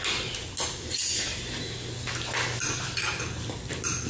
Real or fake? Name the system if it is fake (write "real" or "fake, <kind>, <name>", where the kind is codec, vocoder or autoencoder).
real